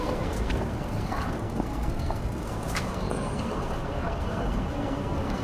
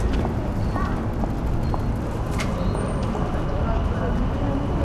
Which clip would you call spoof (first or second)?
first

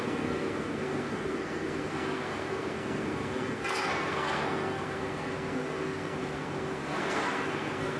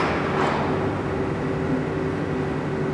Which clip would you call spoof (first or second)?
first